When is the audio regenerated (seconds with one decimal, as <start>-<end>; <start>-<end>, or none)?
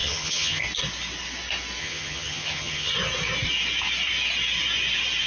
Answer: 0.0-0.6; 1.8-2.9